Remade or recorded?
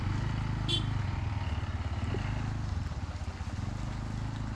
recorded